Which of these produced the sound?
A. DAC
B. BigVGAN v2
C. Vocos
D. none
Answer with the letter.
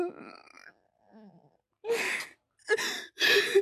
D